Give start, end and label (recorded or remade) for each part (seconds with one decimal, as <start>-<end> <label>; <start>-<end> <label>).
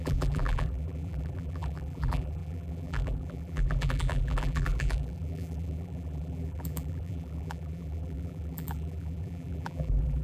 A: 0.0-10.2 remade